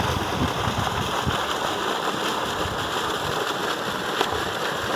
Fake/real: real